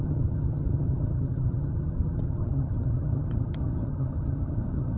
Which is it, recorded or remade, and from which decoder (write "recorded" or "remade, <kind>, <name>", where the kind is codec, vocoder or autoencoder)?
remade, vocoder, HiFi-GAN